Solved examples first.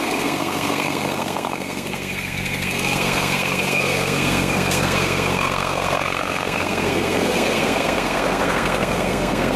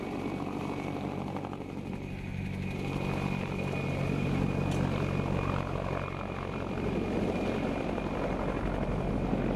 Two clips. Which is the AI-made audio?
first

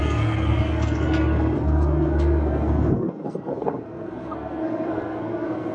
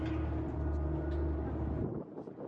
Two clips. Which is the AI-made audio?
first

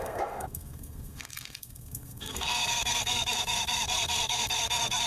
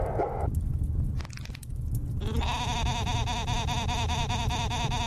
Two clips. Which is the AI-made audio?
first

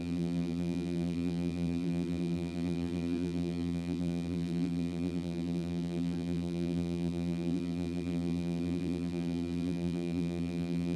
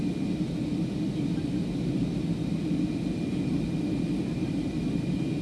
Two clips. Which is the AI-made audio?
first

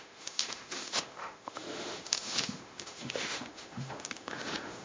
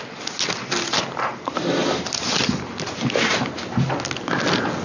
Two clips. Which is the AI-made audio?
first